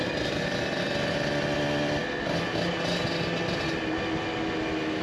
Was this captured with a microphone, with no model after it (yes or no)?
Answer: yes